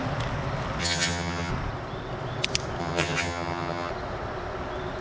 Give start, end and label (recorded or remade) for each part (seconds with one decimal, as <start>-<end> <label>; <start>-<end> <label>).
0.0-0.8 recorded; 0.8-1.5 remade; 1.5-2.8 recorded; 2.8-3.9 remade; 3.9-5.0 recorded